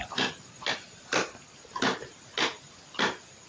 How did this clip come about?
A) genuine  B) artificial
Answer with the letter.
A